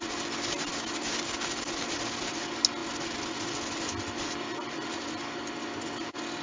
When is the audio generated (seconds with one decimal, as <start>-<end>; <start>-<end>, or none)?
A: none